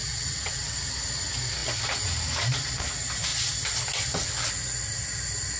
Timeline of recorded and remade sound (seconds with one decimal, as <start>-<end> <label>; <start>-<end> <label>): 0.0-0.8 remade; 0.8-5.6 recorded